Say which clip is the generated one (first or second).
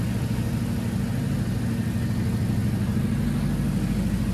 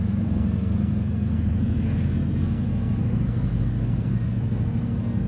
second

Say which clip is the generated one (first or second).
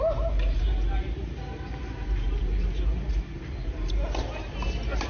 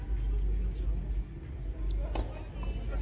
first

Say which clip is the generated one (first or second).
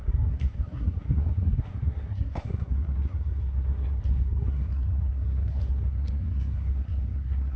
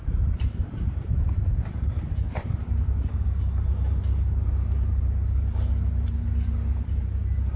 first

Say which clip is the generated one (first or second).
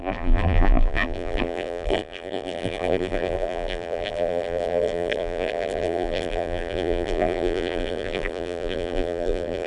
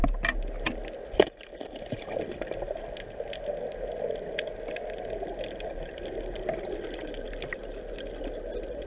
first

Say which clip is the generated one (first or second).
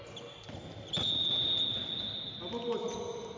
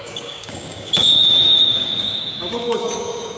second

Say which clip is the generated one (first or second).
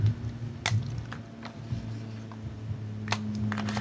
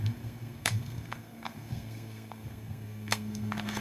second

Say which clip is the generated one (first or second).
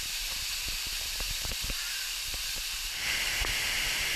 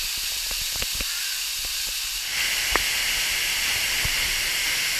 first